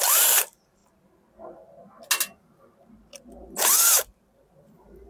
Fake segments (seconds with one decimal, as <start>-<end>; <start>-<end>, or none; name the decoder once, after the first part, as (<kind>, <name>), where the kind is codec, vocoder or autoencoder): 0.0-0.8 (vocoder, BigVGAN v2); 3.9-5.1